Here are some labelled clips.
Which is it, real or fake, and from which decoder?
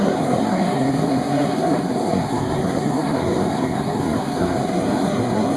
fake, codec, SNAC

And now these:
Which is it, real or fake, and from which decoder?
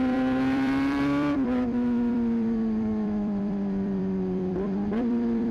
fake, vocoder, BigVGAN v2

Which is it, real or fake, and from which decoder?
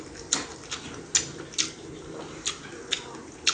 real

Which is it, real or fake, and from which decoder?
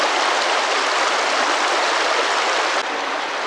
real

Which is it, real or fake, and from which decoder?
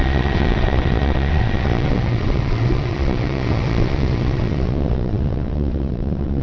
fake, vocoder, WaveNeXt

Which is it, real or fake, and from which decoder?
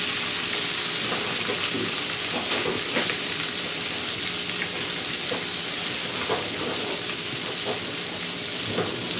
real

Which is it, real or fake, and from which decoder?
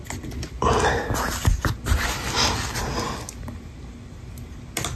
real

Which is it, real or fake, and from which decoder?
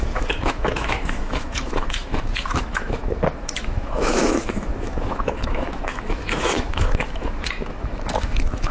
fake, autoencoder, DAC-VAE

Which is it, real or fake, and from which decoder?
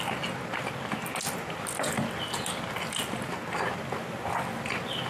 real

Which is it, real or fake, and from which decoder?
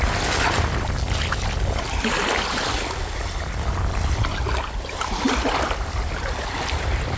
real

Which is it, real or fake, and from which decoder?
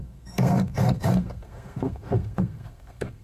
fake, codec, SNAC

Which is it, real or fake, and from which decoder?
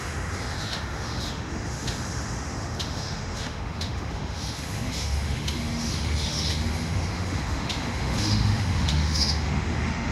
fake, autoencoder, DAC-VAE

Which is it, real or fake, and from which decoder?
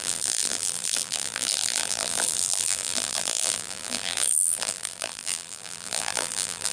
fake, vocoder, BigVGAN v2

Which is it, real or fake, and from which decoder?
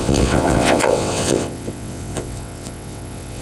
fake, vocoder, WaveNeXt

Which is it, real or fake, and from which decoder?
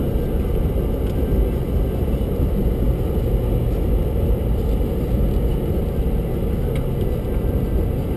real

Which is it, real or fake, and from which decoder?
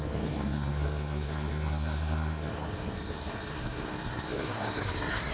fake, codec, SNAC